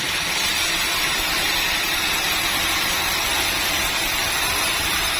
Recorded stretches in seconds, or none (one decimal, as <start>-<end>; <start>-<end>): none